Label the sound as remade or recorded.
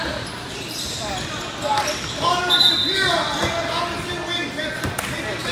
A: recorded